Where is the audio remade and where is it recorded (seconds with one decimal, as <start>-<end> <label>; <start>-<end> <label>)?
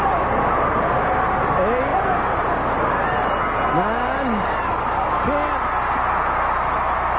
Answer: 0.0-7.2 recorded